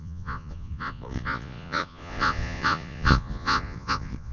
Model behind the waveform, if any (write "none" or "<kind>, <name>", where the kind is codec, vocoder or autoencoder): vocoder, Vocos